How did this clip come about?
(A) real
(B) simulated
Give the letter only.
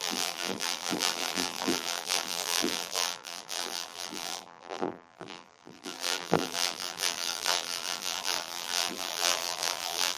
B